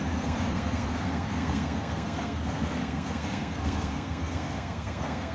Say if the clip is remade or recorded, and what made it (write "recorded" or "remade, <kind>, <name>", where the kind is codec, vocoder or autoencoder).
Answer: remade, codec, SNAC